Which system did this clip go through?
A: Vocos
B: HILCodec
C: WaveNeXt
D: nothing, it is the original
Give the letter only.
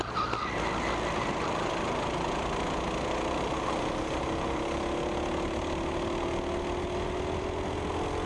D